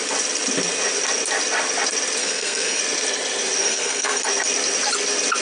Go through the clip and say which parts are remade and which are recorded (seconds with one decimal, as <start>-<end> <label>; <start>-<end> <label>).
0.0-2.2 recorded; 2.2-2.8 remade; 2.8-3.6 recorded; 3.6-4.2 remade; 4.2-5.4 recorded